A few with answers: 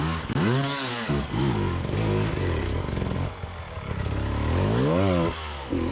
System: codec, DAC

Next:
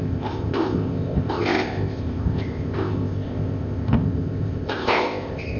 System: codec, ZipCodec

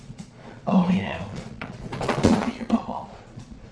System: vocoder, Vocos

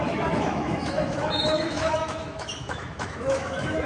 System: autoencoder, DAC-VAE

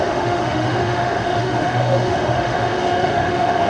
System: autoencoder, DAC-VAE